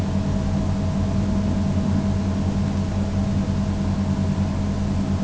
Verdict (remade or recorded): recorded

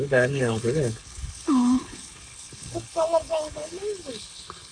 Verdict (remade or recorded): remade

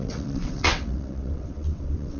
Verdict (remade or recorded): remade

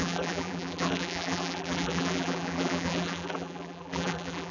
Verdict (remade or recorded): remade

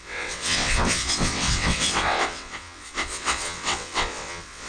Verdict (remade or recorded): remade